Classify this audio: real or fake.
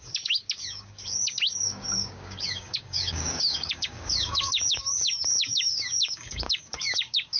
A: fake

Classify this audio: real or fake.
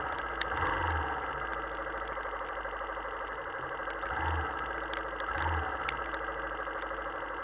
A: real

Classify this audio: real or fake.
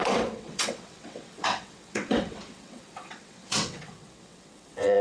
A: fake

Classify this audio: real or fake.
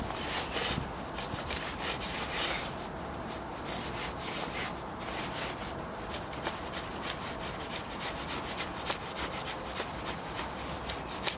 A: real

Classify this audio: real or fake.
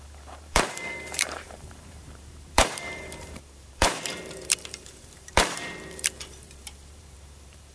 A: fake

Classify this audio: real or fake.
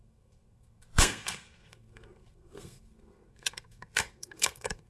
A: fake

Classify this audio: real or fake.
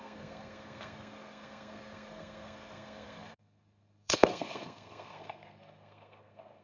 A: fake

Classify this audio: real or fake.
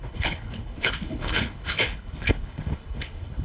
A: fake